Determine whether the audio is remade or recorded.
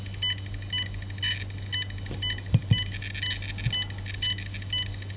recorded